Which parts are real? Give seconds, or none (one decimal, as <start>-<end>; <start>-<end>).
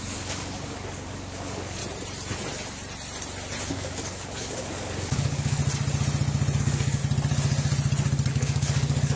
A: 1.8-3.7; 5.6-6.6; 7.0-8.3